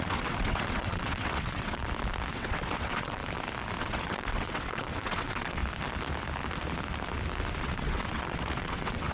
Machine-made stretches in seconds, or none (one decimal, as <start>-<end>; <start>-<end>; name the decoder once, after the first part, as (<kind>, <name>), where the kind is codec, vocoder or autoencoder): 0.0-1.8 (vocoder, WaveNeXt); 2.3-3.2; 3.8-5.6; 7.6-9.1